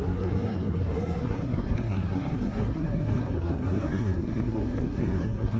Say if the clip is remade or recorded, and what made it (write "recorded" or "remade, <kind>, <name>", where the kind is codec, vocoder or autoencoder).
remade, codec, SNAC